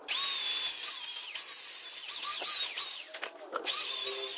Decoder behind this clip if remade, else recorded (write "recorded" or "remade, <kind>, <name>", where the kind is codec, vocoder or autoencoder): recorded